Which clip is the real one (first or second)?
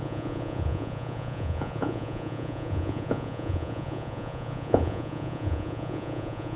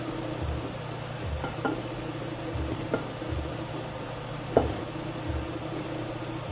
second